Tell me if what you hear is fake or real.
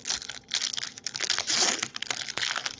real